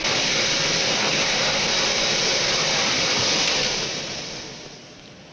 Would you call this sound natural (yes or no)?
yes